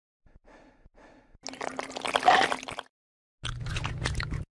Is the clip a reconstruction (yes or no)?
no